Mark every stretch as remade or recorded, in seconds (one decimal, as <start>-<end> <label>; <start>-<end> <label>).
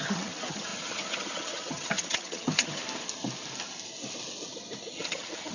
0.0-2.8 remade; 2.8-4.9 recorded; 4.9-5.5 remade